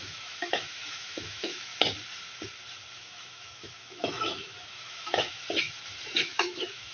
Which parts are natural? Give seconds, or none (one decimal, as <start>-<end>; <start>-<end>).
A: 1.7-2.9; 5.4-6.2